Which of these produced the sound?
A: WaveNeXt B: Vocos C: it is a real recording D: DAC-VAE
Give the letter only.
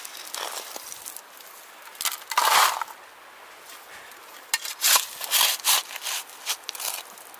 C